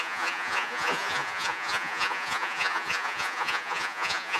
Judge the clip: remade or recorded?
remade